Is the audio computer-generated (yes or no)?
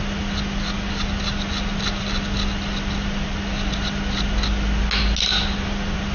no